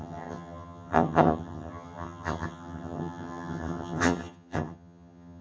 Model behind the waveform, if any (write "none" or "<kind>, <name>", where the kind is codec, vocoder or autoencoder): vocoder, HiFi-GAN